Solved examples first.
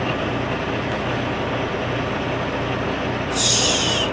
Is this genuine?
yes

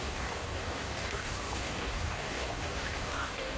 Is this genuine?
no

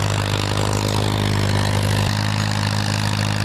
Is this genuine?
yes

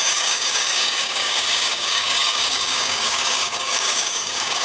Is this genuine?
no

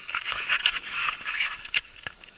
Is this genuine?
no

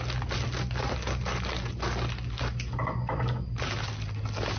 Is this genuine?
yes